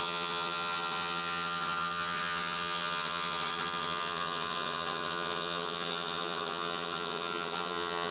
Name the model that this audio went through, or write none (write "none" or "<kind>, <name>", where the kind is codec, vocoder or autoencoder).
vocoder, HiFi-GAN